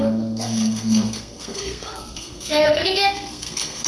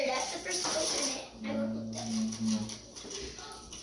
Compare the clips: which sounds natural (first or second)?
second